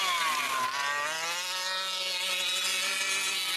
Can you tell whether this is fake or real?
real